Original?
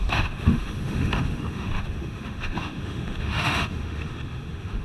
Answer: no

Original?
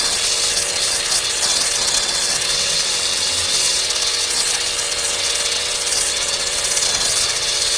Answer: no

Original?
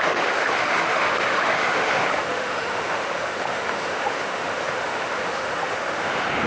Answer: no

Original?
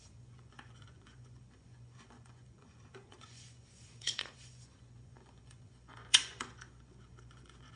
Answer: no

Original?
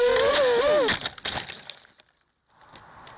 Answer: yes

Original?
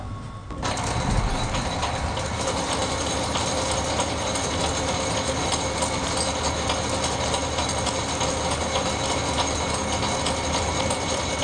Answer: yes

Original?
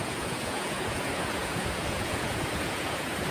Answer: no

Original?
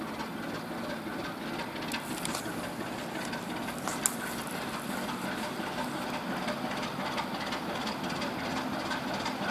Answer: yes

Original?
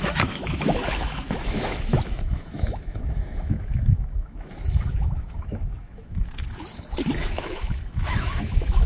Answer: no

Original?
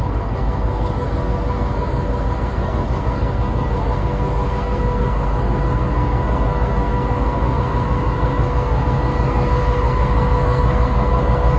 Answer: no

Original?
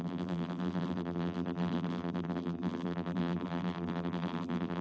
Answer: no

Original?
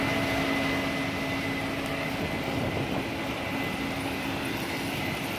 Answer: yes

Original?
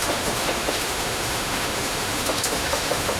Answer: no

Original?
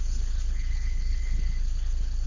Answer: no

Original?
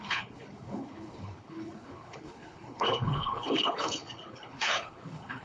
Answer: no